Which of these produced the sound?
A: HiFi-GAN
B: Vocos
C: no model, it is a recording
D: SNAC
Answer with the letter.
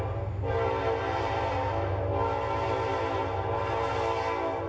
C